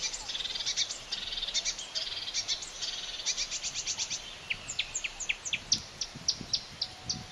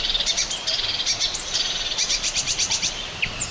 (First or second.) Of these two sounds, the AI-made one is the second